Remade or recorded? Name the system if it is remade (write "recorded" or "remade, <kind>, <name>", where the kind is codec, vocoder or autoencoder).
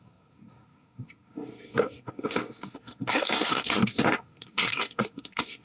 remade, codec, SNAC